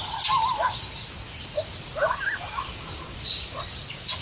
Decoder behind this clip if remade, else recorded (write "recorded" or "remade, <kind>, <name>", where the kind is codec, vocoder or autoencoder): recorded